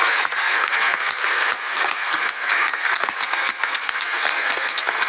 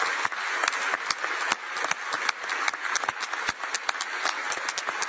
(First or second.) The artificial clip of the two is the first